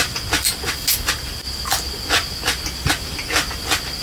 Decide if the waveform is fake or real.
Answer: real